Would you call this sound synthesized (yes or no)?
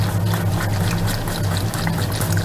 no